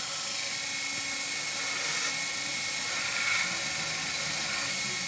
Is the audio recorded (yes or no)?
yes